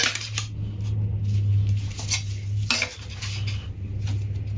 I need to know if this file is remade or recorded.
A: recorded